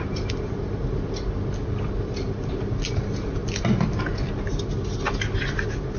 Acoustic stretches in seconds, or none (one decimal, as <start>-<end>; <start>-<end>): 0.0-6.0